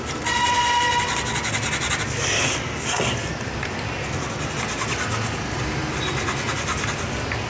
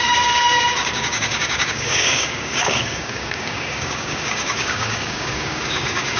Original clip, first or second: first